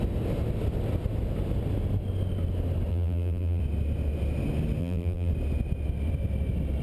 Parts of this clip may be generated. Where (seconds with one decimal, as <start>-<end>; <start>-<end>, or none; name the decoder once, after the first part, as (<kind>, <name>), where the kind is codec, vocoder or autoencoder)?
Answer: 2.9-3.6 (vocoder, BigVGAN v2); 4.8-5.3